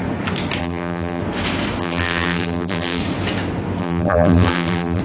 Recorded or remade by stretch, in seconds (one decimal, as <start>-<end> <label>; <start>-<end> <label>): 0.0-0.6 recorded; 0.6-1.2 remade; 1.2-1.8 recorded; 1.8-3.0 remade; 3.0-3.8 recorded; 3.8-5.0 remade